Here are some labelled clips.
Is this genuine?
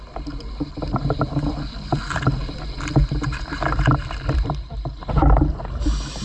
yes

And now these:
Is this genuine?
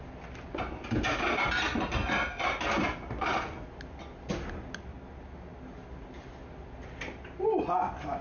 yes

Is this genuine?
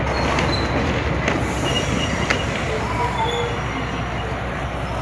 yes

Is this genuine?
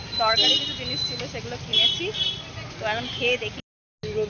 yes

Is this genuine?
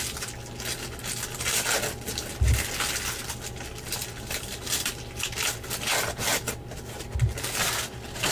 yes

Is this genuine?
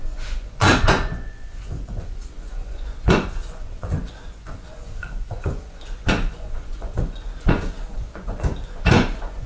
no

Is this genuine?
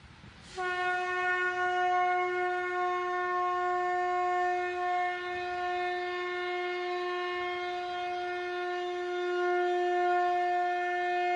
yes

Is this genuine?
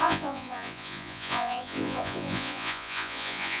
no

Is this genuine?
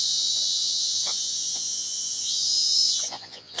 no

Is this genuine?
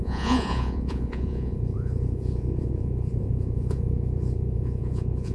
no